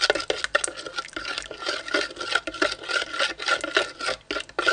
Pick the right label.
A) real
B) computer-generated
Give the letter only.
A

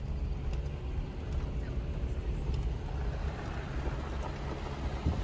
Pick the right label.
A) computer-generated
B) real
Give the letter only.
B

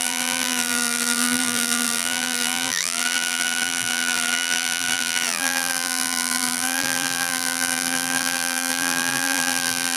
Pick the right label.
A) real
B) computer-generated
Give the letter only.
B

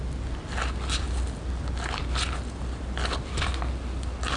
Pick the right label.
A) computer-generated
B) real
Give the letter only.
B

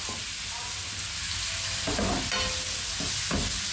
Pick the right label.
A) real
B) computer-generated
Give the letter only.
A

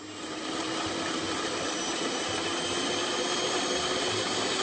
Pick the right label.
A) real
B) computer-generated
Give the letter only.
B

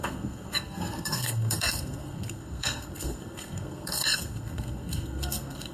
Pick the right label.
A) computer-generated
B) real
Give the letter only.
A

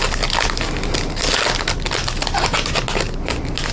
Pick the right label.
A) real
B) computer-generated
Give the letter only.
A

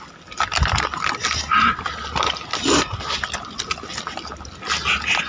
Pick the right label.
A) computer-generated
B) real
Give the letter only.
B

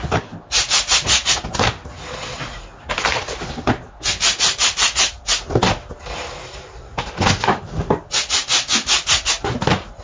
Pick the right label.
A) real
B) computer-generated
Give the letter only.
A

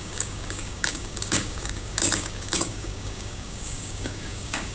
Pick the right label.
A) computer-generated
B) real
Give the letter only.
A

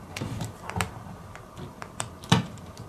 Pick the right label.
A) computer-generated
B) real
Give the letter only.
A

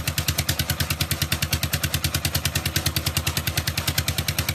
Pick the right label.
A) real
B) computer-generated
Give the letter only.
A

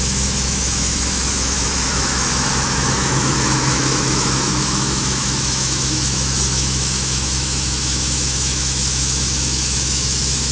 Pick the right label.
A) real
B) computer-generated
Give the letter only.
B